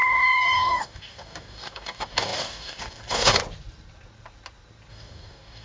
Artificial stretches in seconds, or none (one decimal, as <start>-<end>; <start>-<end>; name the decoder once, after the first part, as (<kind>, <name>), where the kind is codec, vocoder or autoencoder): 0.0-3.4 (codec, DAC); 4.9-5.6